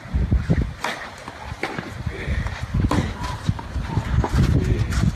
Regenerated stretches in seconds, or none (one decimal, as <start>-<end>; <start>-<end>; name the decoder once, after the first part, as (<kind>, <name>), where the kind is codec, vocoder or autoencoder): none